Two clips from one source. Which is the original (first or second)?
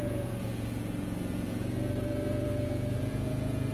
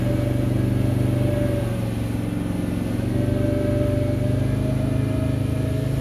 second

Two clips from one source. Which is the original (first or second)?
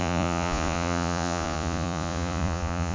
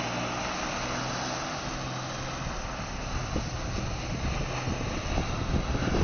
second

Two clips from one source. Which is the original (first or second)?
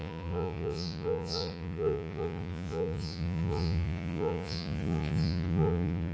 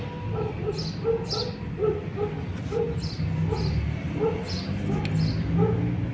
second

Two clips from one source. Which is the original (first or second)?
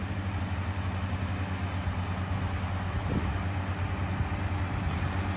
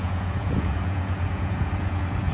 first